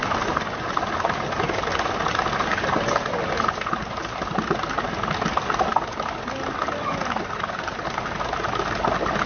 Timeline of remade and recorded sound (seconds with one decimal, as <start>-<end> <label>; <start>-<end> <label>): 0.0-9.3 recorded